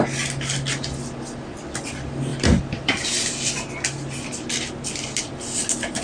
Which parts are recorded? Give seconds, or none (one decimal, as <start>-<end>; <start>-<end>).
0.0-6.0

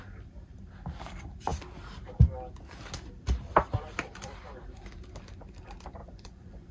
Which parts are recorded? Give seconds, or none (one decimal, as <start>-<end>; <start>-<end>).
0.0-6.0

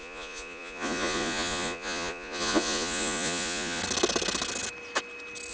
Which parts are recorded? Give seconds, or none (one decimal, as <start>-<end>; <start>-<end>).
3.8-5.5

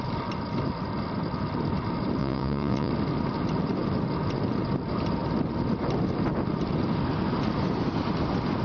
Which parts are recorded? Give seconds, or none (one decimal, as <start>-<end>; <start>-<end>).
0.0-2.2; 2.9-8.6